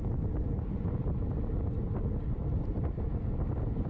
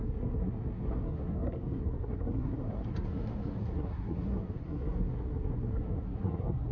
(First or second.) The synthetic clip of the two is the second